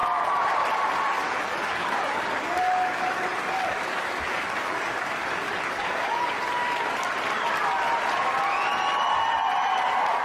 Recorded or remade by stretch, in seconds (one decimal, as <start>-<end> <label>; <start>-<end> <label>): 0.0-1.2 recorded; 1.2-6.4 remade; 6.4-10.2 recorded

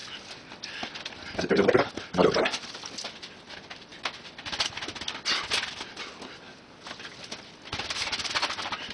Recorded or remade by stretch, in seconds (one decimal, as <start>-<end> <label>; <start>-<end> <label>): 0.0-3.9 remade; 3.9-6.3 recorded; 6.3-8.9 remade

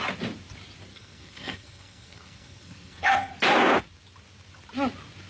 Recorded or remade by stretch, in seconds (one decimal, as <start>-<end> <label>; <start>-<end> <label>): 0.0-0.9 recorded; 0.9-3.3 remade; 3.3-5.3 recorded

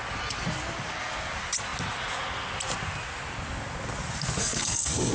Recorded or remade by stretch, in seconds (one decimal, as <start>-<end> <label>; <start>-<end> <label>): 0.0-4.4 recorded; 4.4-5.1 remade